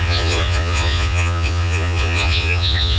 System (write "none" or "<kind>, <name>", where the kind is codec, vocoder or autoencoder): vocoder, Vocos